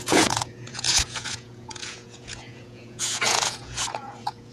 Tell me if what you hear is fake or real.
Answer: fake